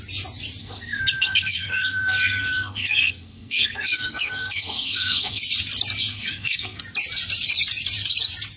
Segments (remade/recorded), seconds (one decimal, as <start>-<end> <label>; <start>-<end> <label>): 0.0-0.6 recorded; 0.6-5.4 remade; 5.4-6.1 recorded; 6.1-6.8 remade; 6.8-8.6 recorded